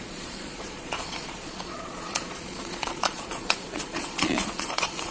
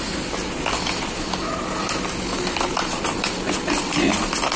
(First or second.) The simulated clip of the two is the first